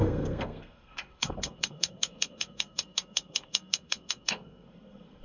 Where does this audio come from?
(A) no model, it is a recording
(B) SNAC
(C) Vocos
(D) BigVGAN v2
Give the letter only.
B